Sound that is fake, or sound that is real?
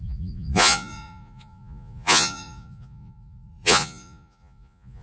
fake